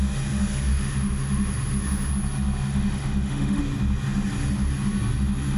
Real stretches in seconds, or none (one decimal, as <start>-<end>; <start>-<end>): 0.0-0.7; 2.1-2.7; 3.6-5.6